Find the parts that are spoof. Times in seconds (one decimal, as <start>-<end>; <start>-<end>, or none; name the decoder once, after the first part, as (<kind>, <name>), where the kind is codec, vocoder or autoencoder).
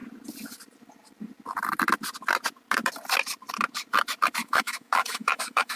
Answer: 4.4-5.8 (autoencoder, DAC-VAE)